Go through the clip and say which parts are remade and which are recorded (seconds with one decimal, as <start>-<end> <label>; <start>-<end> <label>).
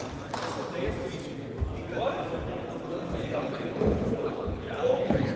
0.0-3.2 recorded; 3.2-5.4 remade